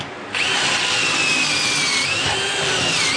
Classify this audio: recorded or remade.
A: recorded